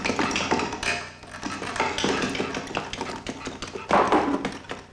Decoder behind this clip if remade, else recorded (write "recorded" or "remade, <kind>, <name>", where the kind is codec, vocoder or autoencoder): recorded